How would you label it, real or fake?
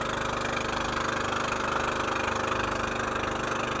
real